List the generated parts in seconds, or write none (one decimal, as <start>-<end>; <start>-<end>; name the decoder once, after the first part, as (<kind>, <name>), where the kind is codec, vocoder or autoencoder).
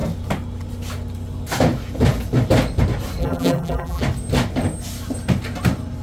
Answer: 3.2-4.0 (vocoder, BigVGAN v2)